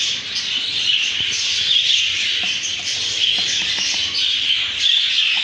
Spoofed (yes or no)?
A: no